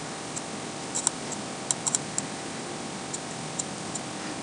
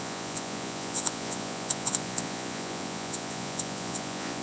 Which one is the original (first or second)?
first